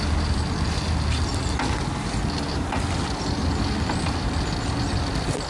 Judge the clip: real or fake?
real